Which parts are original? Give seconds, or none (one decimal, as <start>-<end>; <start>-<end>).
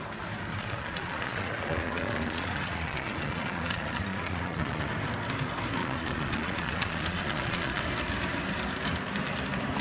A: 0.0-0.5; 4.9-5.8; 7.8-9.8